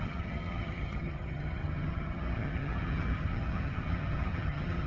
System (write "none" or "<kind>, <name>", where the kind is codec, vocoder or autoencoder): vocoder, HiFi-GAN